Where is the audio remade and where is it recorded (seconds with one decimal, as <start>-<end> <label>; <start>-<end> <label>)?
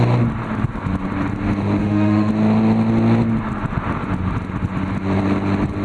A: 0.0-1.8 recorded; 1.8-2.3 remade; 2.3-5.8 recorded